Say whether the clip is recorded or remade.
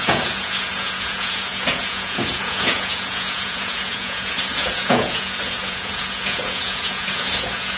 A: remade